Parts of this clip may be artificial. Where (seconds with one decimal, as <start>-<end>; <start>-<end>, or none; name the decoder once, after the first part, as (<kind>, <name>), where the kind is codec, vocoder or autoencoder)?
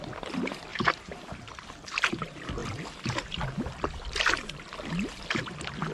0.7-1.2 (vocoder, BigVGAN v2)